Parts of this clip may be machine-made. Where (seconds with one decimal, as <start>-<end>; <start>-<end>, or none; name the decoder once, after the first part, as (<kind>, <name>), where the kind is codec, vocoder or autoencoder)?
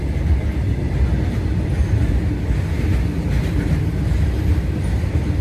none